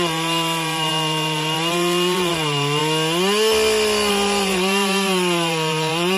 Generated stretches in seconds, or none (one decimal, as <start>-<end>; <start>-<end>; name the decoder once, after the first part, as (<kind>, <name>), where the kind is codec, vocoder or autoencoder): 0.0-2.8 (vocoder, BigVGAN v2); 4.1-6.2